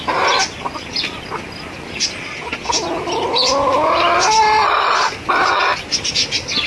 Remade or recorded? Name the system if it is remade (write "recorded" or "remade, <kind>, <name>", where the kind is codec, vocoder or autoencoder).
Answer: recorded